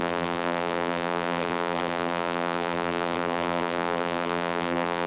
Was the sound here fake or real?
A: fake